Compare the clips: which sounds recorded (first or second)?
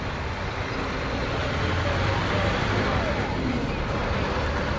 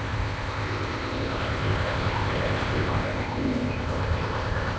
first